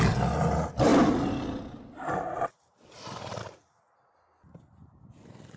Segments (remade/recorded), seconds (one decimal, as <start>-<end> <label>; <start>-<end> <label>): 0.0-5.6 recorded